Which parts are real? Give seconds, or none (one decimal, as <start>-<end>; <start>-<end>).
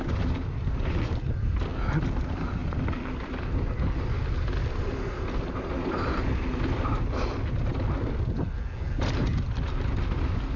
0.0-10.6